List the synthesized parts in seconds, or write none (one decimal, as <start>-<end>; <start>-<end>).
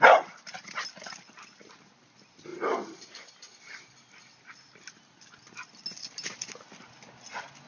2.5-3.3